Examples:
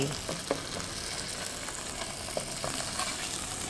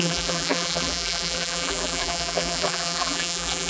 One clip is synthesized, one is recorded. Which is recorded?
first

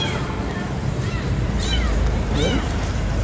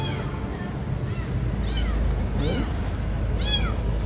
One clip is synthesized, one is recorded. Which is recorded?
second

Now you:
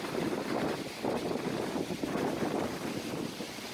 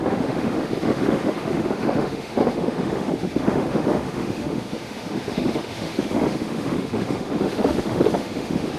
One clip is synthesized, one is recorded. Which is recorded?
first